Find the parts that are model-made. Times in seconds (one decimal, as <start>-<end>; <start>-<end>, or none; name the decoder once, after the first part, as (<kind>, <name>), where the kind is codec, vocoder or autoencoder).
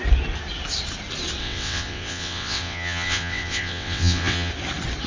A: 1.4-4.5 (vocoder, WaveNeXt)